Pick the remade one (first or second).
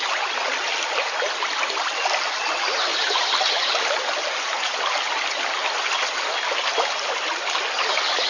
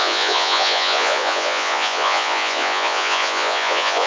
second